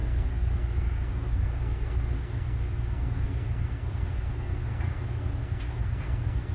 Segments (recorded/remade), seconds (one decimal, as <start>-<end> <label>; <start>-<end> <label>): 0.0-6.5 remade